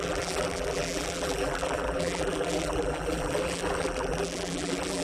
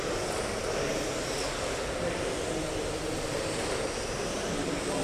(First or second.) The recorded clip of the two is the second